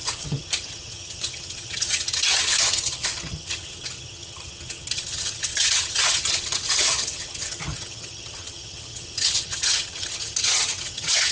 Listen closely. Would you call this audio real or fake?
fake